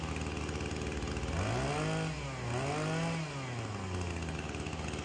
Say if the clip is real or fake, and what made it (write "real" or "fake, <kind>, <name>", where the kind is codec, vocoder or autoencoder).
real